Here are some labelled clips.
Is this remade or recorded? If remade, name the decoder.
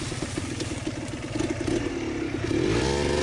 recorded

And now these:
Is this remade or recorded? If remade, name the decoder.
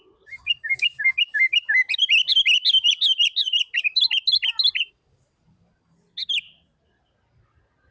recorded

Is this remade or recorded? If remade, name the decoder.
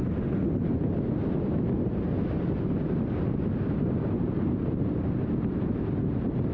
remade, vocoder, BigVGAN v2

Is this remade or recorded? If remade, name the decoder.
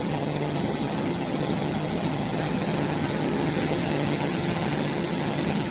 remade, vocoder, HiFi-GAN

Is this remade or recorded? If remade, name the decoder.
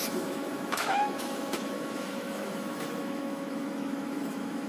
remade, autoencoder, DAC-VAE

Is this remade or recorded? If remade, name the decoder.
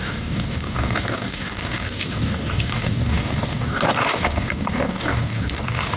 remade, codec, DAC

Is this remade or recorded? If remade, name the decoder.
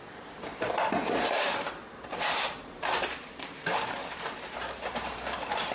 remade, vocoder, BigVGAN v2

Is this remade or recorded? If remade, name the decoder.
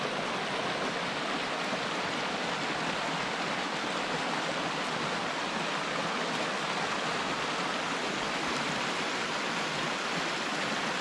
recorded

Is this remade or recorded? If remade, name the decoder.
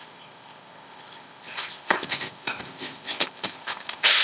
remade, codec, ZipCodec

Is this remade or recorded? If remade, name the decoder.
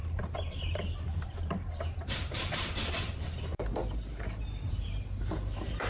remade, vocoder, BigVGAN v2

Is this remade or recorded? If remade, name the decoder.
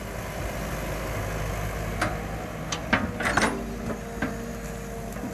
recorded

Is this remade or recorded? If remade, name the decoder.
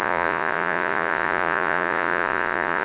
remade, vocoder, Vocos